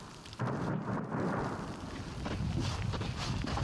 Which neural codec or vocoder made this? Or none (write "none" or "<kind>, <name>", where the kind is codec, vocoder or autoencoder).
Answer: none